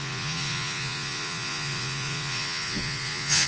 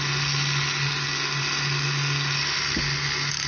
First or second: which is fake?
first